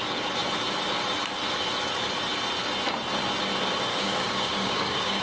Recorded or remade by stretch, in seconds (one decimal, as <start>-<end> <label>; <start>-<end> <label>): 0.0-3.9 recorded; 3.9-5.2 remade